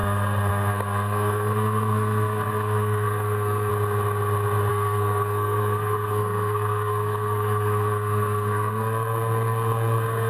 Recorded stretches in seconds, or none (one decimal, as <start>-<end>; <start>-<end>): 3.7-4.7